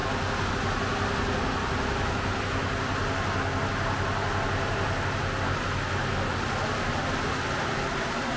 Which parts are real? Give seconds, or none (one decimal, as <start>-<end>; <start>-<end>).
0.0-8.4

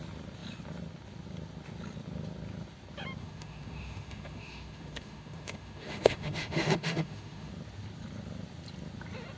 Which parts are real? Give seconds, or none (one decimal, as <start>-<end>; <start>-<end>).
0.0-3.2; 7.5-9.4